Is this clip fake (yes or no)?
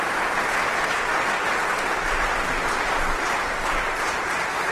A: no